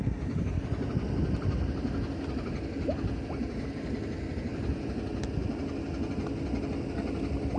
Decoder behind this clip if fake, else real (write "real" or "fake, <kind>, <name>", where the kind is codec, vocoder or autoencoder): real